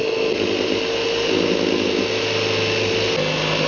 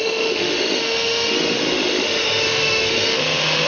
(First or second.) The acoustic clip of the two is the first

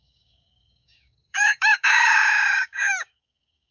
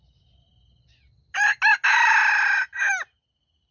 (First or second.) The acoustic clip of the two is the second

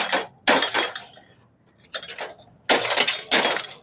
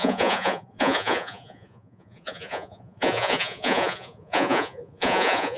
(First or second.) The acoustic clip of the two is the first